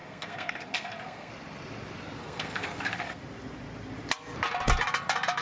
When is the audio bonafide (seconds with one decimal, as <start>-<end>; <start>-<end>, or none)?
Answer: 1.3-2.2; 3.2-5.4